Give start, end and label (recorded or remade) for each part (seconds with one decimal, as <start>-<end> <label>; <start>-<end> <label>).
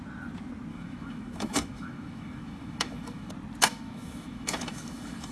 0.0-0.7 recorded; 0.7-3.3 remade; 3.3-3.7 recorded; 3.7-5.3 remade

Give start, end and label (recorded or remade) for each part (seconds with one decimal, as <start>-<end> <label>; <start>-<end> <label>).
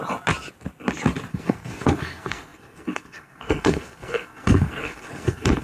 0.0-1.3 recorded; 1.3-5.6 remade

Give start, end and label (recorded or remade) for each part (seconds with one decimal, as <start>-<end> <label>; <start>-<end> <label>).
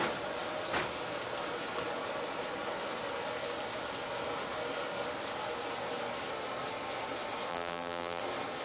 0.0-7.5 recorded; 7.5-8.2 remade; 8.2-8.6 recorded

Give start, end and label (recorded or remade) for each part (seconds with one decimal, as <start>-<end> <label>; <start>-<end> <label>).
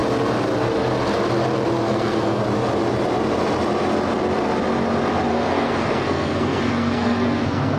0.0-1.8 recorded; 1.8-2.4 remade; 2.4-5.3 recorded; 5.3-7.8 remade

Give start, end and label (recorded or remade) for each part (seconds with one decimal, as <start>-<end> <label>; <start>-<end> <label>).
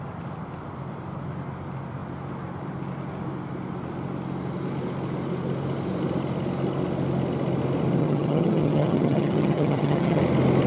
0.0-8.0 recorded; 8.0-10.2 remade; 10.2-10.7 recorded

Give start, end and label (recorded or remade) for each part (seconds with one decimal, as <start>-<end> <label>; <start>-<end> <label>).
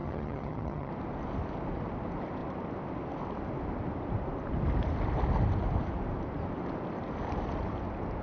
0.0-0.9 remade; 0.9-8.2 recorded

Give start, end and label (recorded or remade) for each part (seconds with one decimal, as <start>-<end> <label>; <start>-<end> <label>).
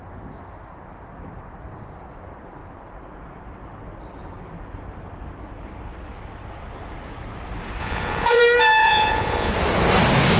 0.0-7.8 recorded; 7.8-8.4 remade; 8.4-8.8 recorded; 8.8-9.5 remade; 9.5-10.4 recorded